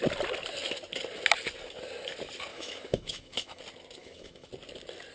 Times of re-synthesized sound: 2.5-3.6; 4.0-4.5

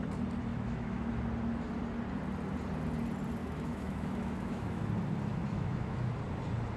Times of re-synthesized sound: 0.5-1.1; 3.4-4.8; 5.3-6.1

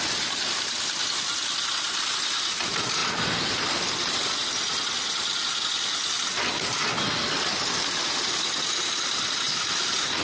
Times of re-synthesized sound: none